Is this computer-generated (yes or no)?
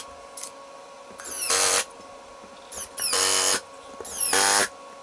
no